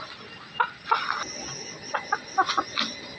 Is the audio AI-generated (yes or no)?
no